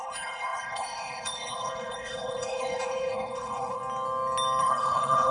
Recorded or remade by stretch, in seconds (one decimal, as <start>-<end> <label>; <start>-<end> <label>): 0.0-3.8 remade; 3.8-4.6 recorded; 4.6-5.3 remade